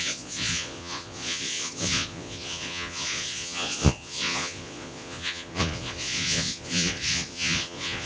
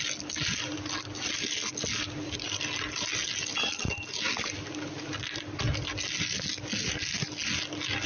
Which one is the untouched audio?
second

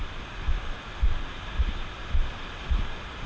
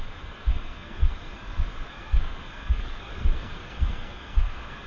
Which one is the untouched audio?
first